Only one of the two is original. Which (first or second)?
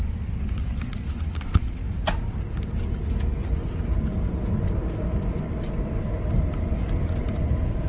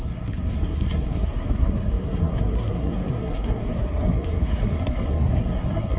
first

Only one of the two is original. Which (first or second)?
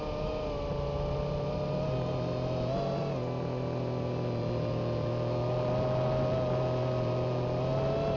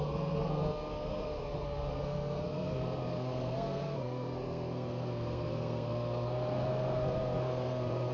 first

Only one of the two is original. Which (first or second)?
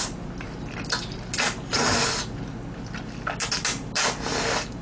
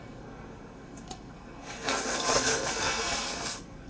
first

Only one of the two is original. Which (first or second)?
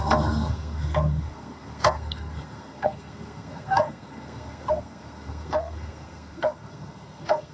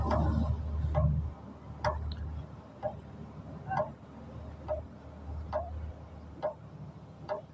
second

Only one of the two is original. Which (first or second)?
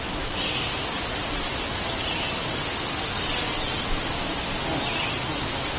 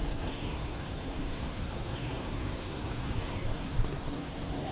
first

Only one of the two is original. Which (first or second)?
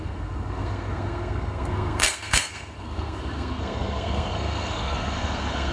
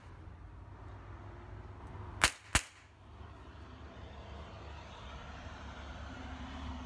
second